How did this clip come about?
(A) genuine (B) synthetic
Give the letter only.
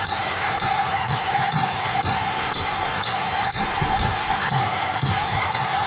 B